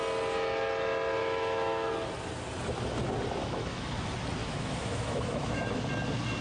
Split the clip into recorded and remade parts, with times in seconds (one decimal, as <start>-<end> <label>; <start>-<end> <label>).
0.0-1.2 recorded; 1.2-1.9 remade; 1.9-3.4 recorded; 3.4-3.9 remade; 3.9-4.4 recorded; 4.4-5.8 remade; 5.8-6.4 recorded